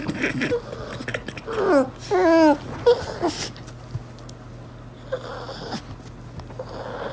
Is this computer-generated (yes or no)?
no